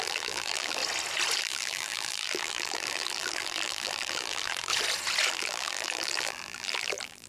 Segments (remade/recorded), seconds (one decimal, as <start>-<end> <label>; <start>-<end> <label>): 0.0-0.8 remade; 0.8-1.4 recorded; 1.4-4.7 remade; 4.7-5.3 recorded; 5.3-7.3 remade